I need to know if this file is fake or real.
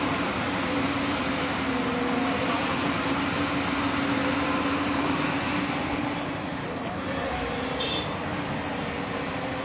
fake